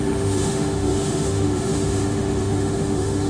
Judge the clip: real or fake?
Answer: fake